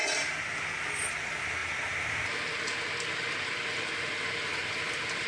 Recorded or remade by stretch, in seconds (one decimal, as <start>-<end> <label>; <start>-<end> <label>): 0.0-5.3 recorded